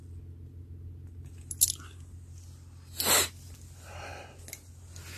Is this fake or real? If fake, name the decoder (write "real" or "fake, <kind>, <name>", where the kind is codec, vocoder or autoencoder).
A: real